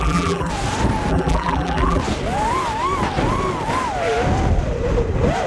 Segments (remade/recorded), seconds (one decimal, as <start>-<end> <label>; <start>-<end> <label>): 0.0-0.5 remade; 0.5-1.1 recorded; 1.1-2.0 remade; 2.0-5.5 recorded